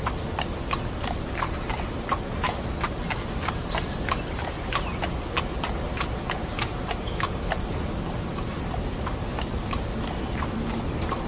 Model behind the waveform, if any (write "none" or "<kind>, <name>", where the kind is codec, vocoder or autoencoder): none